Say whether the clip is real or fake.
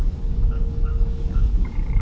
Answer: fake